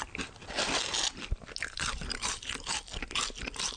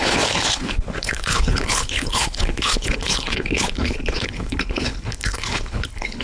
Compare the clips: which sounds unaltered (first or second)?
first